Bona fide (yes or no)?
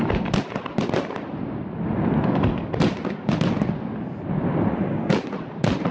yes